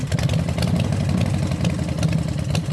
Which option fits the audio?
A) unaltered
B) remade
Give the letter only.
A